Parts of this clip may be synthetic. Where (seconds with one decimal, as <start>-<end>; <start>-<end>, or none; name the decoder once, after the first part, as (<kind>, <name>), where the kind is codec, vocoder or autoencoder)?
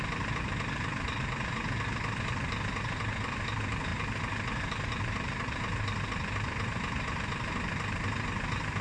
none